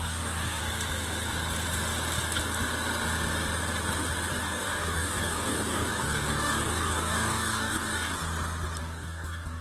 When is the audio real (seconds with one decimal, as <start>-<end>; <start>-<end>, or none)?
0.6-4.3; 8.1-8.8